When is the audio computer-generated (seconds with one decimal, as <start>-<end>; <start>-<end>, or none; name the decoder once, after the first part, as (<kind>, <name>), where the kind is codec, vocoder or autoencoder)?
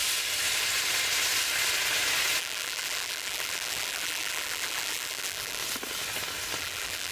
2.4-5.6 (vocoder, BigVGAN v2); 6.6-7.1